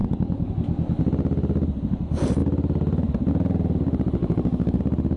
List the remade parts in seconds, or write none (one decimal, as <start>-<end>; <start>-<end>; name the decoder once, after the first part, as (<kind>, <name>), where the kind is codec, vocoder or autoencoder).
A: 0.0-0.5 (codec, DAC); 4.2-4.8